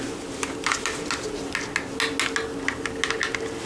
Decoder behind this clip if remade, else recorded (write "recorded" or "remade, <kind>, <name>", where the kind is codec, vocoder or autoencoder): recorded